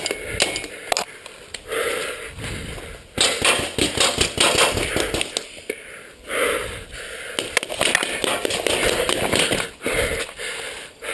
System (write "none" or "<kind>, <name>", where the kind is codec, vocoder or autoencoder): none